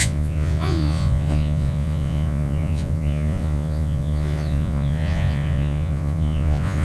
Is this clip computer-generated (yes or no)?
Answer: yes